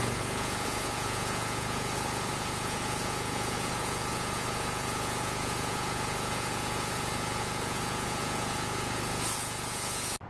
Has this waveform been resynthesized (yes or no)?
yes